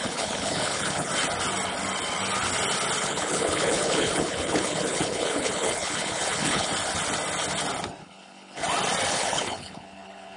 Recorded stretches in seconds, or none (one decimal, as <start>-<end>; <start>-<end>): 1.1-3.0; 6.7-8.0; 8.6-9.1